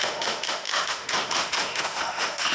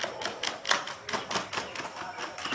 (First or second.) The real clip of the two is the second